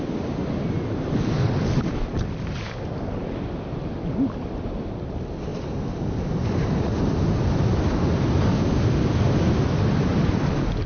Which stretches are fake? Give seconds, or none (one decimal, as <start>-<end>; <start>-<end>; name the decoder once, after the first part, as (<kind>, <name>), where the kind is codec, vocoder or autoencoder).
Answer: none